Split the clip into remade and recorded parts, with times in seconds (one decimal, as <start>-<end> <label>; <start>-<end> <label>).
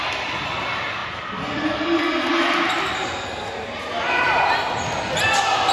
0.0-5.7 recorded